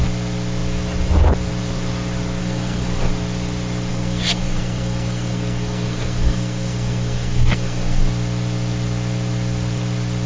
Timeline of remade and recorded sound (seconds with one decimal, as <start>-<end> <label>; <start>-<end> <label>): 0.0-2.4 recorded; 2.4-3.1 remade; 3.1-3.9 recorded; 3.9-8.0 remade; 8.0-10.3 recorded